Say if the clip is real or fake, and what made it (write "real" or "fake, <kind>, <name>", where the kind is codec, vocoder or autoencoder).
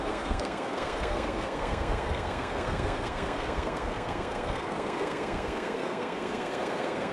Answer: fake, codec, SNAC